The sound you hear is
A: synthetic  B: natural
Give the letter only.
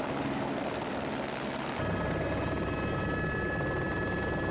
B